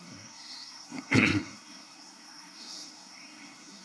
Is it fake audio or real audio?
fake